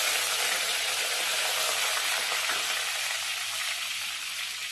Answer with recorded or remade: recorded